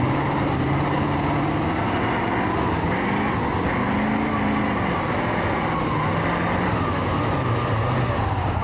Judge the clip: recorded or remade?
recorded